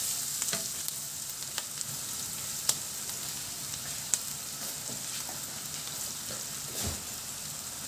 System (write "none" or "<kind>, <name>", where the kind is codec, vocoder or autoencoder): none